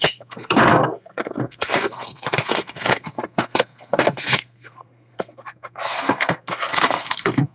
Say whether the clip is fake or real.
fake